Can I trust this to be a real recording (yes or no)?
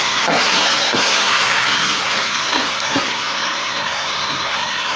no